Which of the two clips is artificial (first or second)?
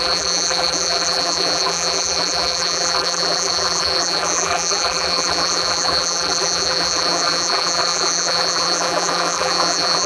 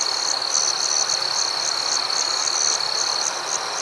first